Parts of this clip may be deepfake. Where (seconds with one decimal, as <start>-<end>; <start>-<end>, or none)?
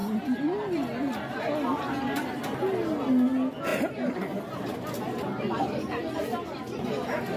none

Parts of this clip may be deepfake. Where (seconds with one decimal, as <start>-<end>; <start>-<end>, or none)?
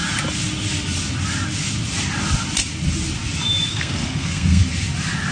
3.7-4.6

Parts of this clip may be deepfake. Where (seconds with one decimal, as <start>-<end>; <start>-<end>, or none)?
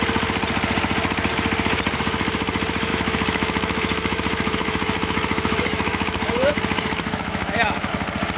2.9-7.9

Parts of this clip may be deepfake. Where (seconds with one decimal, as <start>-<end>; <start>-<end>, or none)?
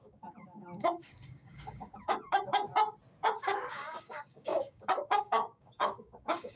0.0-2.7; 3.4-6.6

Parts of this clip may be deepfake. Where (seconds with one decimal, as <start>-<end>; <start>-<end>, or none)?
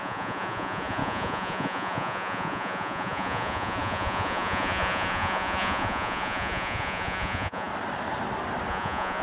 0.0-7.7; 8.7-9.2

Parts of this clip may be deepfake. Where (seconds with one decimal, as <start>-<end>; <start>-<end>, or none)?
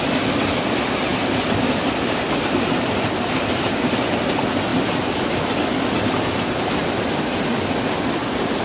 none